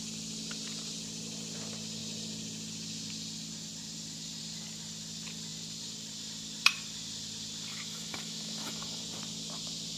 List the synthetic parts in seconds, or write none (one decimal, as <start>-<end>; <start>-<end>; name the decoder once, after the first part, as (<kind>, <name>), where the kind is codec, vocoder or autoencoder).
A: 7.7-9.0 (autoencoder, DAC-VAE)